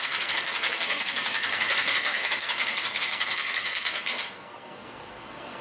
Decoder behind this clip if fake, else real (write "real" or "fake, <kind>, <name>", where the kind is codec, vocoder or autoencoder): fake, codec, SNAC